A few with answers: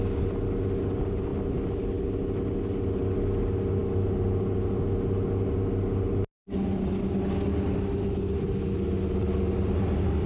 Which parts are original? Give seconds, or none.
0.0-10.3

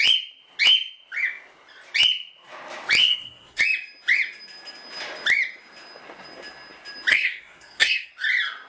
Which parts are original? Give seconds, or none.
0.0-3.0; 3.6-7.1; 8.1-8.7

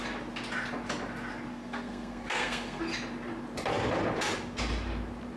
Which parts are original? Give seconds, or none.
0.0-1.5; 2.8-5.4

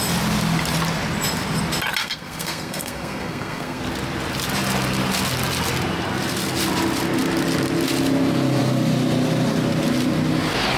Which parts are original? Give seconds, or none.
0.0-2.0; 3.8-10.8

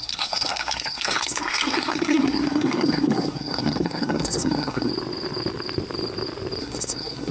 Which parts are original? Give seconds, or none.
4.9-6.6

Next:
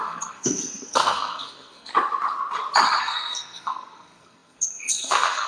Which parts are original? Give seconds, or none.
1.9-3.0